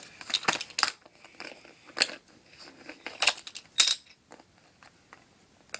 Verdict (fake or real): real